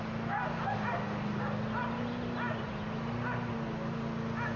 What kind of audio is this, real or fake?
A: real